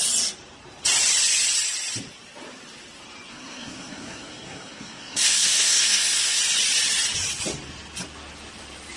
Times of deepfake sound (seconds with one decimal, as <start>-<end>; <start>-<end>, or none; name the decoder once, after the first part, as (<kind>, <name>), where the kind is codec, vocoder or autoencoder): 3.3-6.4 (codec, SNAC)